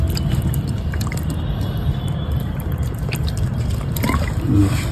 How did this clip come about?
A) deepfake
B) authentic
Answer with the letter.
A